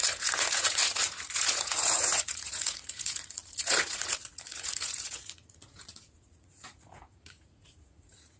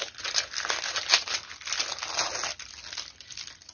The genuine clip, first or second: second